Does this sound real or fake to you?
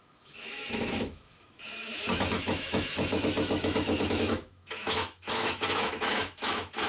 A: fake